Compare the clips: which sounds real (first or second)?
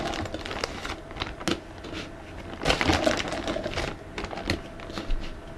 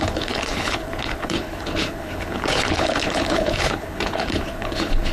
first